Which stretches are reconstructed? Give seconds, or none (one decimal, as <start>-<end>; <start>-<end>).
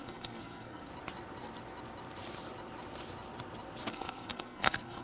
0.0-0.9; 3.9-5.0